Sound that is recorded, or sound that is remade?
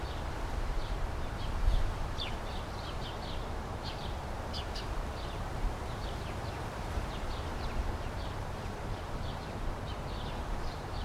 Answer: remade